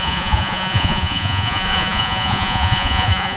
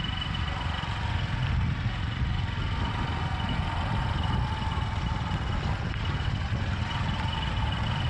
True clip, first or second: second